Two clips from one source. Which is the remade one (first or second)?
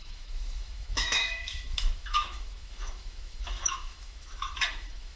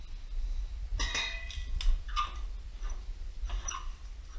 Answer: first